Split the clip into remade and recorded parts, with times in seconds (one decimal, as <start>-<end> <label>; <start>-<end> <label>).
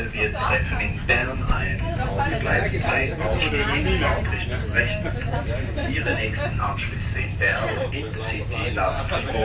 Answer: 0.0-1.2 recorded; 1.2-2.9 remade; 2.9-5.8 recorded; 5.8-8.7 remade; 8.7-9.4 recorded